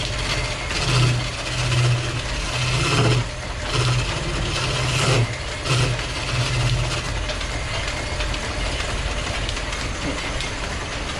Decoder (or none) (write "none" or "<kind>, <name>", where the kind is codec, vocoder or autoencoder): none